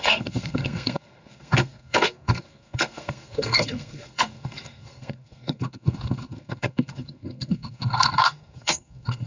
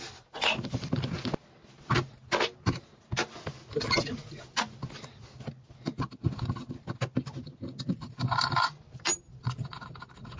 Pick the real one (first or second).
second